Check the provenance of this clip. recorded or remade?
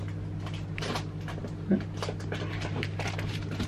recorded